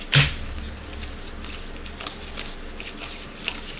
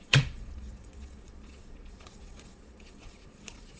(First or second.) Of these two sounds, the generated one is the second